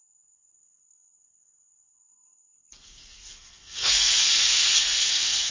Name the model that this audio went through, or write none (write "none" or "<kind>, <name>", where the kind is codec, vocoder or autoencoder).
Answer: codec, SNAC